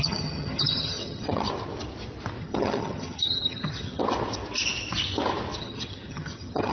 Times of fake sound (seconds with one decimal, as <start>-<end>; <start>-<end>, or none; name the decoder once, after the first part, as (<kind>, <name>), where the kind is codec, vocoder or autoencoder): 0.0-1.5 (vocoder, HiFi-GAN); 2.4-4.0; 5.6-6.7

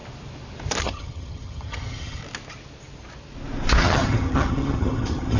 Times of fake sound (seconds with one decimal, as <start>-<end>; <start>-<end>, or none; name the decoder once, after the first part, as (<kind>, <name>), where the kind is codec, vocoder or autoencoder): 0.8-2.2 (vocoder, HiFi-GAN); 3.8-5.4

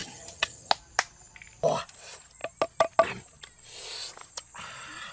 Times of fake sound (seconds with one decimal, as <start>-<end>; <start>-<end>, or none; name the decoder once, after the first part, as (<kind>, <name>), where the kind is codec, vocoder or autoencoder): 0.0-0.7 (vocoder, HiFi-GAN)

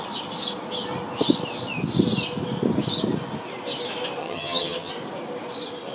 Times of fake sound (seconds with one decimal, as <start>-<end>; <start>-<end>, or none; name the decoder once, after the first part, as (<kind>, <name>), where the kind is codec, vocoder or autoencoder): 4.2-4.9 (vocoder, HiFi-GAN)

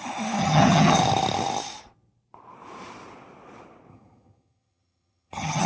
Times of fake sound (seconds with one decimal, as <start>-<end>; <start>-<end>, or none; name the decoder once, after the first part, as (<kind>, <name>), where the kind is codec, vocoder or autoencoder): 0.4-1.0 (vocoder, HiFi-GAN); 3.9-5.7

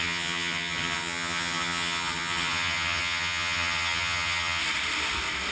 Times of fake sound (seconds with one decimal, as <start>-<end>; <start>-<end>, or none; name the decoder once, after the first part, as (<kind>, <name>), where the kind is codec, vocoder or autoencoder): 0.0-4.6 (vocoder, HiFi-GAN)

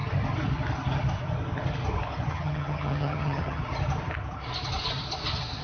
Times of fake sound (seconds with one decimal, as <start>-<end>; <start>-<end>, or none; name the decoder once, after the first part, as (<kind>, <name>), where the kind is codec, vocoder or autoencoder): 2.3-3.6 (vocoder, HiFi-GAN)

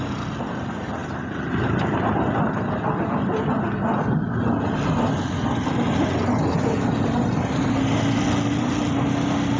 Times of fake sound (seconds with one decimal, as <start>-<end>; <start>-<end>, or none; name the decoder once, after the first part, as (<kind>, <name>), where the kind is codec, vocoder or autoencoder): none